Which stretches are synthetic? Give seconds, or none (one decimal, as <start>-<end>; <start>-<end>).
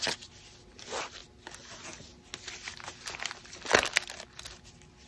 none